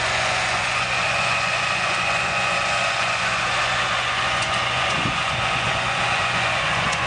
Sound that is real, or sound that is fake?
fake